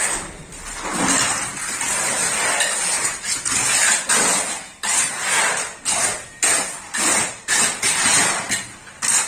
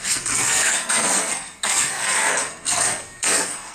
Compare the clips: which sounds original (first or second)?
first